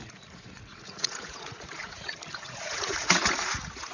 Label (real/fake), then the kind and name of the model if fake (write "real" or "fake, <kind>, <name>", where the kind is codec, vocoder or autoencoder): fake, vocoder, Vocos